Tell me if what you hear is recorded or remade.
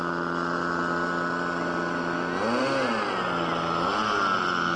recorded